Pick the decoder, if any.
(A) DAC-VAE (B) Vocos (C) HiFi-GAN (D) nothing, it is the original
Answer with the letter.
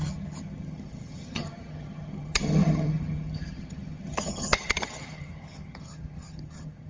C